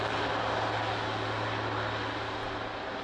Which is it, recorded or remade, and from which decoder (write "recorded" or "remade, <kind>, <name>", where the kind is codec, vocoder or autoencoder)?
recorded